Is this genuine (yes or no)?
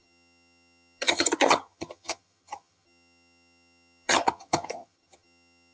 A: no